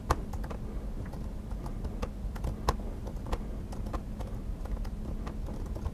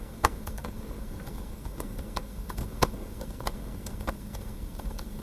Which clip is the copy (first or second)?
second